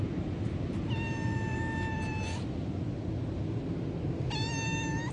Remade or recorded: recorded